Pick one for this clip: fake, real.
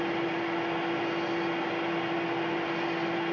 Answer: real